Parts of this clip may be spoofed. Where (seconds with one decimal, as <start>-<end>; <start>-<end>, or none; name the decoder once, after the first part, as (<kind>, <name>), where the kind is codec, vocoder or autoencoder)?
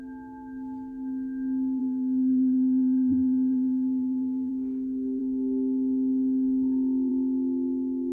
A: 1.8-4.5 (vocoder, BigVGAN v2)